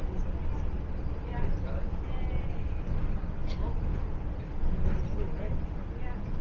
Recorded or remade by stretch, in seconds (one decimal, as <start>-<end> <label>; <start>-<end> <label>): 0.0-6.4 recorded